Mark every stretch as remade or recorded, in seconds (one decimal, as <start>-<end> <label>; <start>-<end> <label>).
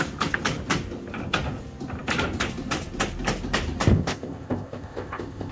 0.0-3.9 recorded; 3.9-5.5 remade